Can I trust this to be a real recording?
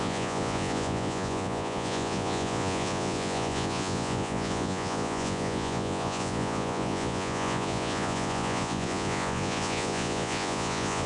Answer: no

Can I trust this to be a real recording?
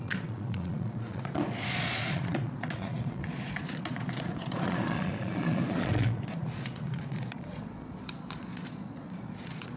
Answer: no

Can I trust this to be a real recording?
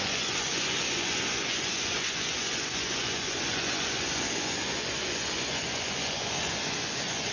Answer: no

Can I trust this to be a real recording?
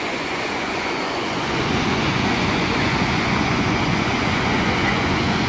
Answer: no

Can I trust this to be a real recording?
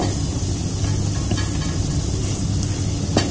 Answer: yes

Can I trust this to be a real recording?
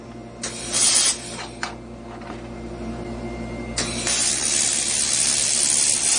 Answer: yes